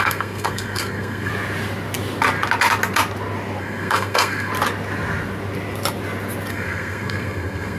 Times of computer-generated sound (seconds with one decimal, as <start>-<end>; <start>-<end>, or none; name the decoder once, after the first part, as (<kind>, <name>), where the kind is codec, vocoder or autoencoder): 0.0-1.3 (codec, SNAC); 3.6-4.5; 6.5-7.8